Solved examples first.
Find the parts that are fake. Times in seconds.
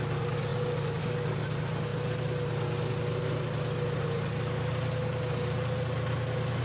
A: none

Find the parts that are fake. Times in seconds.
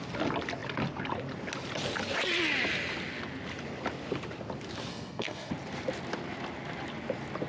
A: 4.9-5.5 (codec, SNAC)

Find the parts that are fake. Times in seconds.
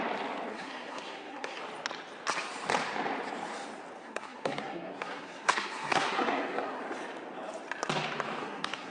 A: 0.5-1.6 (codec, SNAC); 4.0-6.8; 8.4-8.9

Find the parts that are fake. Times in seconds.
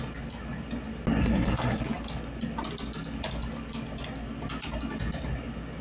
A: 1.2-1.8 (codec, SNAC)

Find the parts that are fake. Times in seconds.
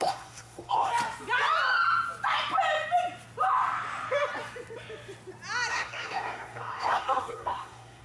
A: 0.0-0.9 (codec, SNAC); 5.7-8.0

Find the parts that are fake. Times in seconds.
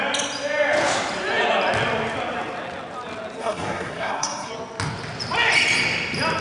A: 3.4-4.5 (codec, SNAC)